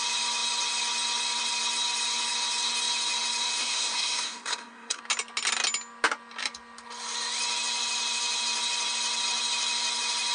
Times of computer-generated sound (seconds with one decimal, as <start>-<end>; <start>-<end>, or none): 3.6-5.0